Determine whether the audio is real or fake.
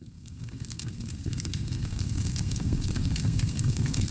fake